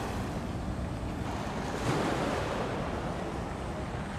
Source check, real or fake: real